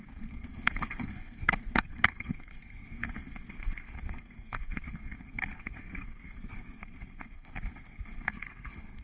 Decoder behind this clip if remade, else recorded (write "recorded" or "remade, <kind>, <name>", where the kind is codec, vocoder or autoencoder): remade, codec, SNAC